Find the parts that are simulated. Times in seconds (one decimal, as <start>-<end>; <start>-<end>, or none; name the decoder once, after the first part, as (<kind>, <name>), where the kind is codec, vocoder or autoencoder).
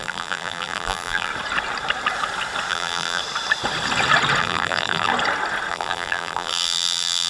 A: 0.0-1.3 (vocoder, BigVGAN v2); 2.7-3.2; 4.4-5.1; 5.7-7.3